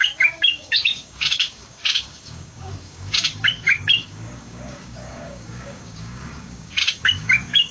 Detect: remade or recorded remade